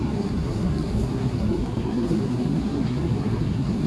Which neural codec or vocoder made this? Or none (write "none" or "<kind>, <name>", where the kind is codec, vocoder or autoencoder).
codec, SNAC